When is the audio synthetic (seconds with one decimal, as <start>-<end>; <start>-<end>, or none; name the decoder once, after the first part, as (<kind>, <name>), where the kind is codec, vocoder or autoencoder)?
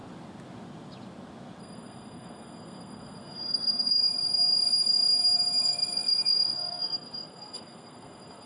1.6-4.0 (codec, SNAC); 5.6-8.5